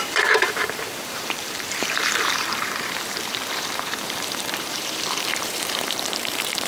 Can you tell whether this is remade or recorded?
remade